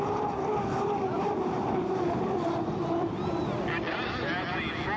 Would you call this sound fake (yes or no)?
no